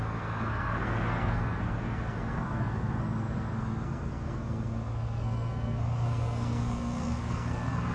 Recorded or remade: remade